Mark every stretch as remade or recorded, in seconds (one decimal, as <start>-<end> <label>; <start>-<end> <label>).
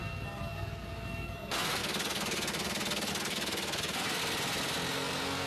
0.0-4.2 remade; 4.2-4.9 recorded; 4.9-5.5 remade